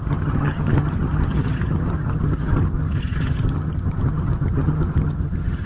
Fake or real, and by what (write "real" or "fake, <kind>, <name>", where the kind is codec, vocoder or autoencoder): fake, vocoder, HiFi-GAN